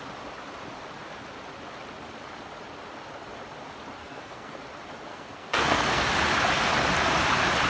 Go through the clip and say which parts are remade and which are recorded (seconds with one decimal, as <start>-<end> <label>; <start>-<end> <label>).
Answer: 0.0-4.0 recorded; 4.0-4.6 remade; 4.6-5.1 recorded; 5.1-6.1 remade; 6.1-7.7 recorded